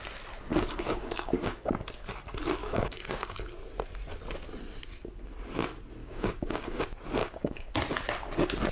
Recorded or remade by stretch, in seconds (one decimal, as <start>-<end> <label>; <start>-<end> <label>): 0.0-0.5 recorded; 0.5-1.7 remade; 1.7-2.6 recorded; 2.6-3.5 remade; 3.5-6.0 recorded; 6.0-6.8 remade; 6.8-7.2 recorded; 7.2-7.7 remade; 7.7-8.7 recorded